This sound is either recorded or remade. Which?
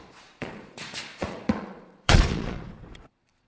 remade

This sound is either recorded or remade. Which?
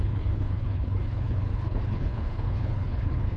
remade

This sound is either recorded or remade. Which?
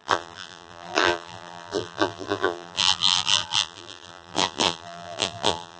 remade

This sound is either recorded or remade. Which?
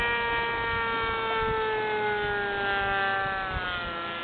recorded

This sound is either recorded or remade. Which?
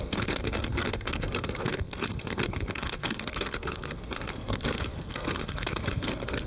remade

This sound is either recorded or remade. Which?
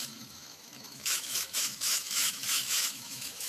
remade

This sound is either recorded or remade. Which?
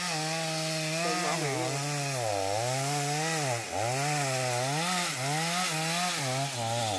recorded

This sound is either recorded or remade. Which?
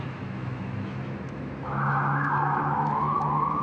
remade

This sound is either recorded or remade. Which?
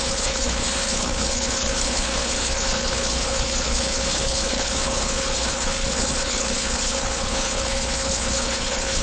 remade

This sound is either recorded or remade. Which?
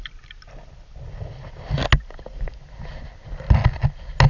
recorded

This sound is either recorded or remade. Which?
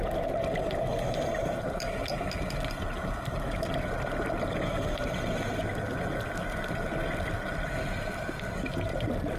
recorded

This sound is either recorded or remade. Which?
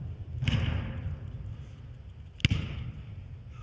recorded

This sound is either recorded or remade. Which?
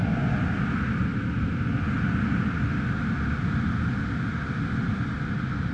recorded